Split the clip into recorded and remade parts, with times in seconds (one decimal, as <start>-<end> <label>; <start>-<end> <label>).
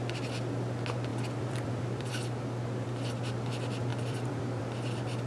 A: 0.0-1.1 recorded; 1.1-2.1 remade; 2.1-3.9 recorded; 3.9-4.6 remade; 4.6-5.3 recorded